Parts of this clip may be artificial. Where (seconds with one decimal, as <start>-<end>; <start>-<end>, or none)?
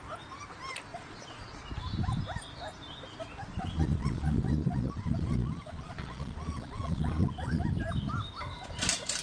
0.9-1.7; 3.5-7.6